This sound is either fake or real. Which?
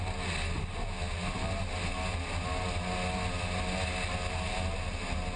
real